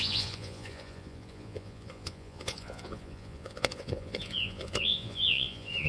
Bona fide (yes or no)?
no